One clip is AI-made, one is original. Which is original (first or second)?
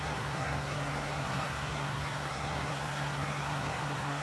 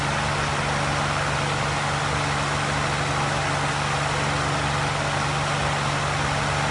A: second